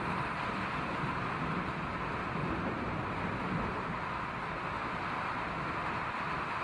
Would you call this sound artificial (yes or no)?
no